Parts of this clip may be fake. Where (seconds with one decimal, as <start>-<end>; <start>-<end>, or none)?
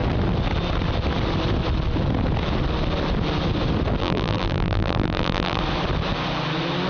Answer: 4.0-5.6